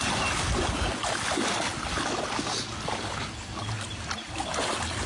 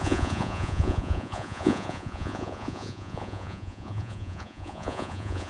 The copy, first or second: second